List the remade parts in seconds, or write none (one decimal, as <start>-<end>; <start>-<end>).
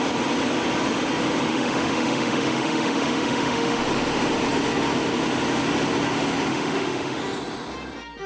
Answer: 1.5-3.8; 6.5-7.2